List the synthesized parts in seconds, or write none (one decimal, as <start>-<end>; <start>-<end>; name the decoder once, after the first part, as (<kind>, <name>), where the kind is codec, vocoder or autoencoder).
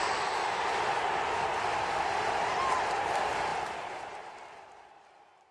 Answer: 0.0-1.5 (vocoder, BigVGAN v2); 3.0-3.5; 4.8-5.5